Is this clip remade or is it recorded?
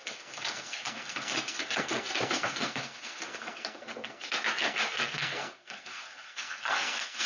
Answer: remade